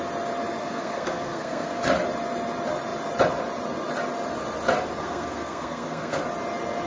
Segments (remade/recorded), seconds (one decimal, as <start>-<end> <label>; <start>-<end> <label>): 0.0-0.6 recorded; 0.6-1.8 remade; 1.8-5.0 recorded; 5.0-6.2 remade; 6.2-6.9 recorded